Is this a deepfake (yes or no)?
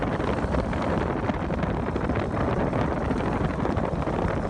no